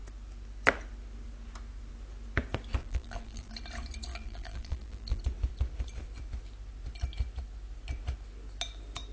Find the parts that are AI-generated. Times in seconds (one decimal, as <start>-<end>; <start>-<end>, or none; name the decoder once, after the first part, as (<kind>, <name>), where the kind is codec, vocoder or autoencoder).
2.8-3.5 (vocoder, BigVGAN v2); 4.1-5.2